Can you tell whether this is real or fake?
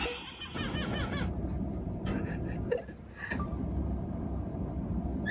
real